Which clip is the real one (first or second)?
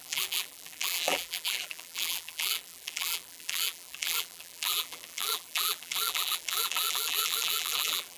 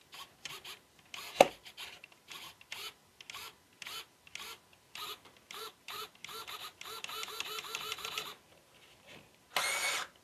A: second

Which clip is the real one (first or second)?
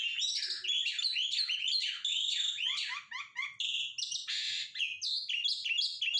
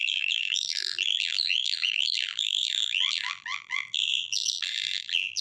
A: first